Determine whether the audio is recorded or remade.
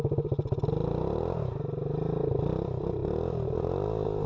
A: recorded